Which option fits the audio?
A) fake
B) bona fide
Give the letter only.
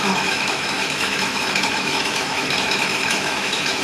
A